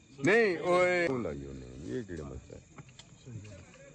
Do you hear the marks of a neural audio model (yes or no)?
no